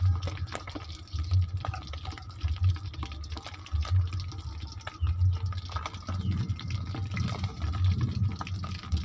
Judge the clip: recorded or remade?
recorded